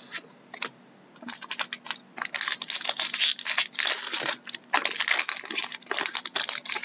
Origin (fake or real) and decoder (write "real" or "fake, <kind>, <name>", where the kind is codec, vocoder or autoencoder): real